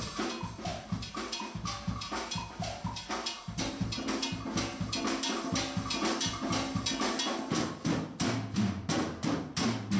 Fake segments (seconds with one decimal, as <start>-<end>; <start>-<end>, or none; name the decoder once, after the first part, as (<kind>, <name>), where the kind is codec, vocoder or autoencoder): 0.7-5.0 (vocoder, BigVGAN v2)